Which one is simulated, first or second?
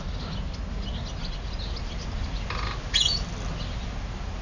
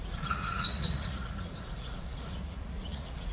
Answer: second